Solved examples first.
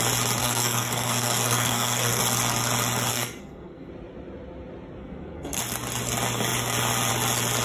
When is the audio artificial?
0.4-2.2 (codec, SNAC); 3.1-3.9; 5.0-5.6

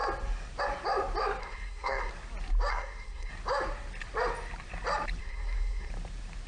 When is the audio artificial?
1.4-2.1 (codec, SNAC); 2.7-3.3; 5.2-5.9

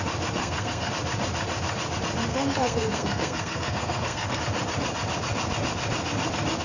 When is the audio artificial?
0.4-0.9 (codec, SNAC); 2.3-4.4

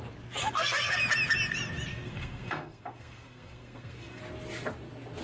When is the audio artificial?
0.4-1.0 (codec, SNAC); 1.9-4.2

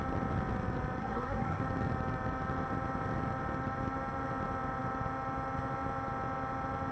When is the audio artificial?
1.0-1.6 (codec, SNAC)

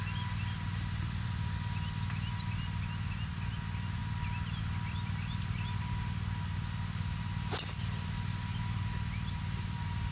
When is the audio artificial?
none

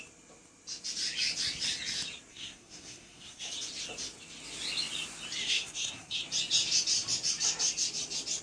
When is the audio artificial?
2.3-3.5 (codec, SNAC); 5.4-6.2